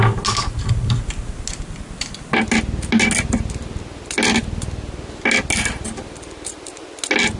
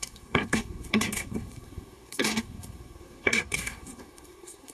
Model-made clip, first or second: second